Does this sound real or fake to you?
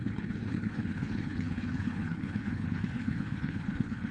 fake